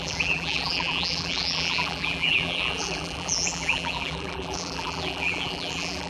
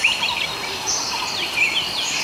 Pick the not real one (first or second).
first